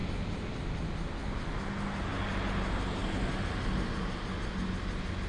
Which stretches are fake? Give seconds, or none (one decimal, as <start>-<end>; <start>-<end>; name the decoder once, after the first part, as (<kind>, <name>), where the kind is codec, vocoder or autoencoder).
none